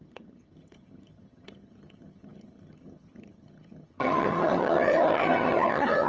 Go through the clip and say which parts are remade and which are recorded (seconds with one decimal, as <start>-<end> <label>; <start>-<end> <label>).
0.0-6.1 remade